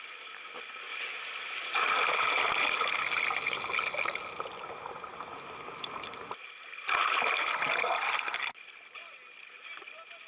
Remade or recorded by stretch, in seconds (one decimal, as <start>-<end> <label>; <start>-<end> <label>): 0.0-10.3 recorded